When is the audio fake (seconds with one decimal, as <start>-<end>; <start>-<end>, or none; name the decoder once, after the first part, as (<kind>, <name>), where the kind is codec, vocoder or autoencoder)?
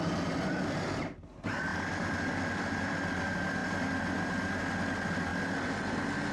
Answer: none